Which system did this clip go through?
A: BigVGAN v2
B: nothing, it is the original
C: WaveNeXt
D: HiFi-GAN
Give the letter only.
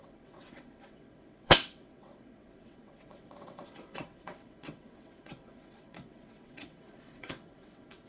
C